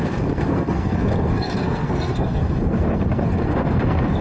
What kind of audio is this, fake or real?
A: fake